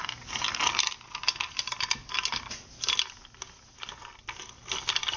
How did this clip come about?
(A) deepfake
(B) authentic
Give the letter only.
B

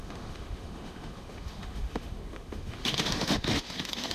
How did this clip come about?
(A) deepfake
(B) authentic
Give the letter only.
A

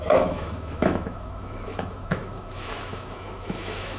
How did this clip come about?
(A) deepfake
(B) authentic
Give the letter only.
A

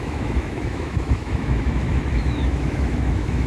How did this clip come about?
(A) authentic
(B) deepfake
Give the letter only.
B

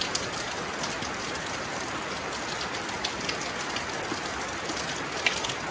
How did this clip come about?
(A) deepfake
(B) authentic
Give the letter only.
B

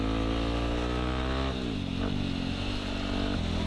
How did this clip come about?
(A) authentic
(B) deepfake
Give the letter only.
A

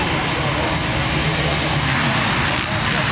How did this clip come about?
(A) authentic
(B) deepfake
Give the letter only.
A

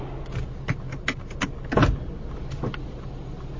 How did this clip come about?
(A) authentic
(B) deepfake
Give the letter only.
A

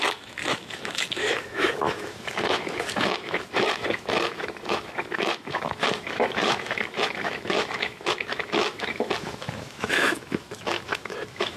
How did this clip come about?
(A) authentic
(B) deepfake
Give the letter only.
B